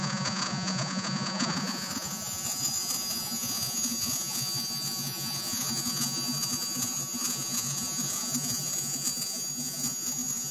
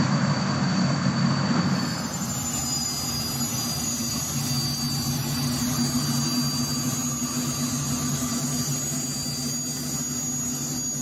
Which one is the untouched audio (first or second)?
second